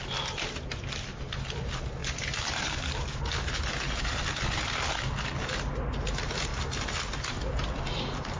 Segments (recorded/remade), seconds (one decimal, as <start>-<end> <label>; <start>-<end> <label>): 0.0-2.0 recorded; 2.0-4.2 remade; 4.2-8.4 recorded